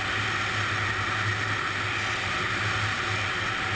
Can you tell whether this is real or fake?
real